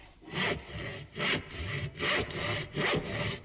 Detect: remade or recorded recorded